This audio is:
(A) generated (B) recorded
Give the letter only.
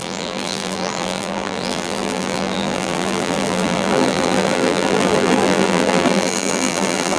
A